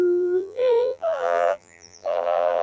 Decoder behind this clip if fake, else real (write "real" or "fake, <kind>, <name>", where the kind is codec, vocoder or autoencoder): fake, vocoder, BigVGAN v2